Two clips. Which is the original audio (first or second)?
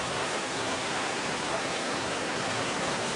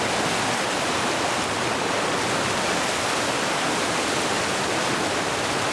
second